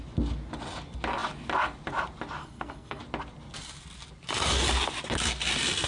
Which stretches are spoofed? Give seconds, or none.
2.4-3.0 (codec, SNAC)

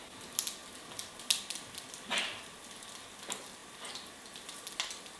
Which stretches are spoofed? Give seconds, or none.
none

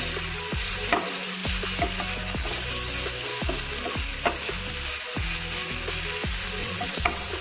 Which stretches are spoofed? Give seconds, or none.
6.6-7.4 (vocoder, WaveNeXt)